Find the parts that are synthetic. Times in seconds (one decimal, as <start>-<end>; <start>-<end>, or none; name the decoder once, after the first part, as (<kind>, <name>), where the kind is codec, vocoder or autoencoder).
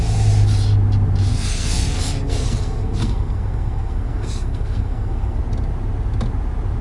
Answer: 1.3-5.4 (codec, SNAC)